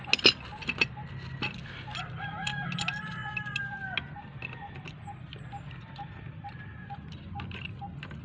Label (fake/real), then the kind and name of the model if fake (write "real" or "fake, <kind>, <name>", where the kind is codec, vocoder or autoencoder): real